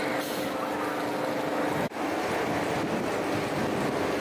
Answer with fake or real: real